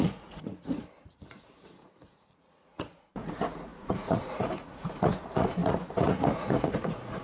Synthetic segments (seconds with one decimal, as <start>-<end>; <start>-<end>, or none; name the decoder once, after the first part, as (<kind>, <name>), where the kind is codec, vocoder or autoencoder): 0.0-7.2 (vocoder, Vocos)